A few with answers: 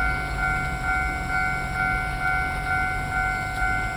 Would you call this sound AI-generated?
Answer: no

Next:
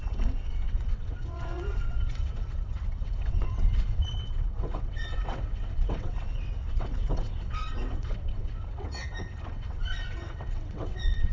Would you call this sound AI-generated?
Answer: yes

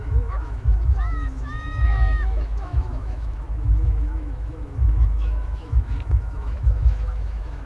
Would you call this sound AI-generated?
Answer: yes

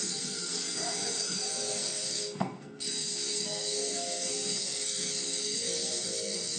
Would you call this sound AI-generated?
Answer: yes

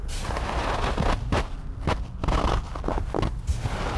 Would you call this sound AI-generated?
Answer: no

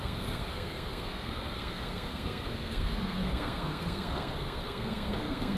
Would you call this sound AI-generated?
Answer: yes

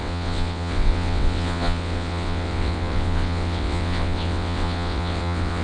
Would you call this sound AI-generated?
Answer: yes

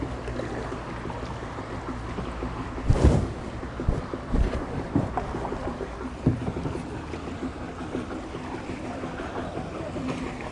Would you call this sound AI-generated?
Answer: no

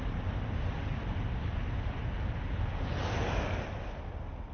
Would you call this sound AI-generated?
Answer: no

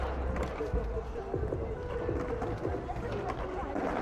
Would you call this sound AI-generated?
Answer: no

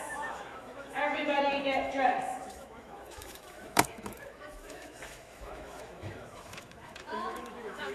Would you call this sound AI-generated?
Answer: yes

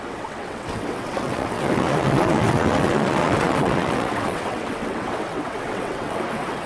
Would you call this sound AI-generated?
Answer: yes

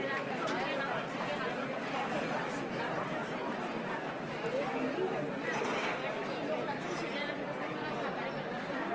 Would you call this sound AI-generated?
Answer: no